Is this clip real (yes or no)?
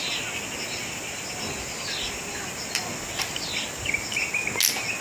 yes